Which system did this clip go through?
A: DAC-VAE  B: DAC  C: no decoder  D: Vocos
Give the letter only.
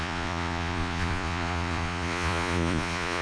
D